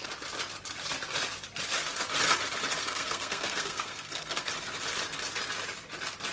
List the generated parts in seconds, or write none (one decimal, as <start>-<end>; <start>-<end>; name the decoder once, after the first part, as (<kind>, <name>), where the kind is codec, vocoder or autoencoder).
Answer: 2.8-4.5 (codec, SNAC)